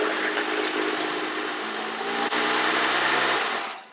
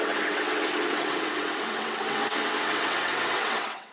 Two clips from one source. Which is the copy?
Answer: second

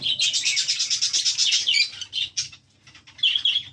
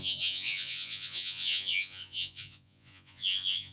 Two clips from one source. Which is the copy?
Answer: second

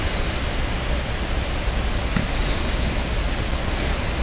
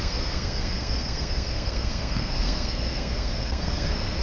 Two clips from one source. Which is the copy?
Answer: second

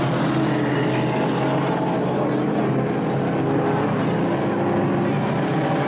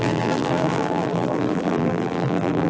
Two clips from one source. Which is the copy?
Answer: second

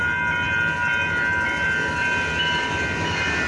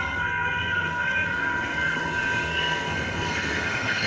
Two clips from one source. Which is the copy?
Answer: second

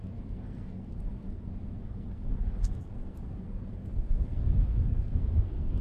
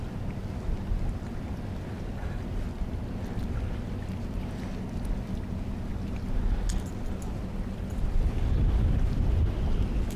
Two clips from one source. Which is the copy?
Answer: first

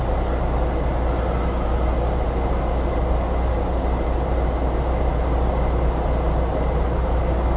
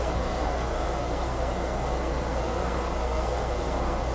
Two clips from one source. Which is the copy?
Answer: second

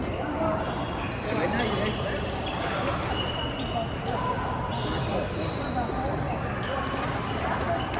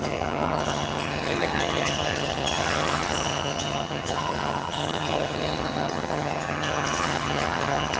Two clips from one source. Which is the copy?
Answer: second